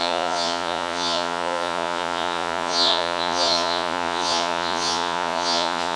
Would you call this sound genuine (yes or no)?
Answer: no